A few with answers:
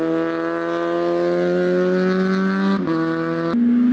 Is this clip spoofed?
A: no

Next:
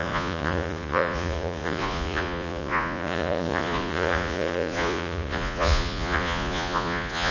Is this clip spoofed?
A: yes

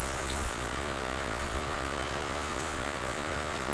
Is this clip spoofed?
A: yes